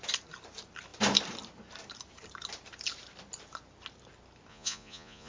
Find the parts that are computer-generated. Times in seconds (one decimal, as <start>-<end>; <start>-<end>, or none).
4.5-5.3